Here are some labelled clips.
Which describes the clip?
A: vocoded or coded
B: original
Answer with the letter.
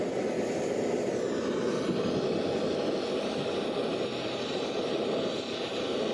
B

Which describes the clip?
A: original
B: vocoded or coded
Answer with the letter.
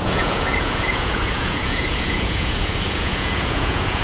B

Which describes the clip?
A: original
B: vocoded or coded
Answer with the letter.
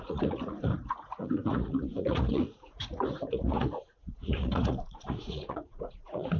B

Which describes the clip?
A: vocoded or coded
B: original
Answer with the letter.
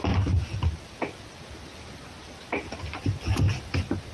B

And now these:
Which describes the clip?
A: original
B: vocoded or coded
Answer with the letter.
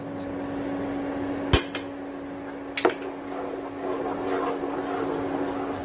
A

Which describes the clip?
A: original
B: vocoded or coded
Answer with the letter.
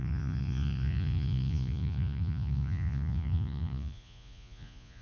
B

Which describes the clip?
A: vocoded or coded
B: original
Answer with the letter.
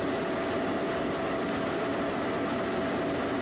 B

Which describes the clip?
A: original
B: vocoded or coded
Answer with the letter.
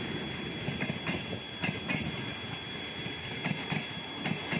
A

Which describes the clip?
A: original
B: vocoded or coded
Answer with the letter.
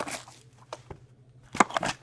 A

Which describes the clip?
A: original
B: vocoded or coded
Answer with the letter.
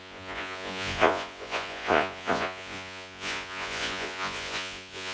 B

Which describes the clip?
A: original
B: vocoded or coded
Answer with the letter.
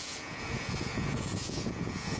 B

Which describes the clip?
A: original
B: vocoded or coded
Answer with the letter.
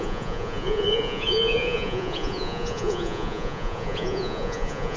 B